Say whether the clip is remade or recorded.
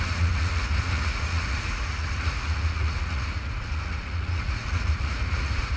remade